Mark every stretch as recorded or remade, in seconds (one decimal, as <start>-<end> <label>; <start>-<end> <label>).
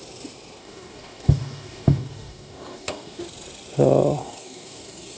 0.0-0.6 recorded; 0.6-3.2 remade; 3.2-4.2 recorded; 4.2-5.2 remade